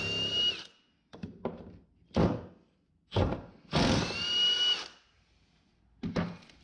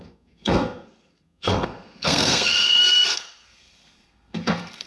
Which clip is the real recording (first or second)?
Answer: first